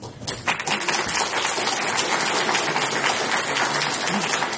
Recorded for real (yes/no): yes